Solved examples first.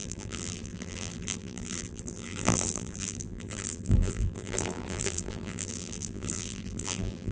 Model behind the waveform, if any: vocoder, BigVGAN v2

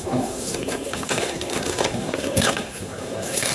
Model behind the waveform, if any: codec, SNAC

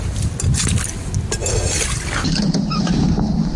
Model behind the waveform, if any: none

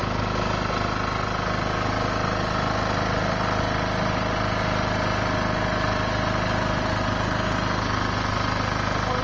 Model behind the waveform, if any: none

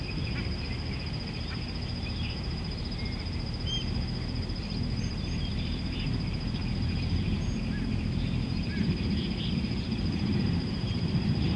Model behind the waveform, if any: vocoder, BigVGAN v2